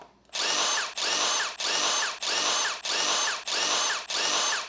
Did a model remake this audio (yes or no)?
no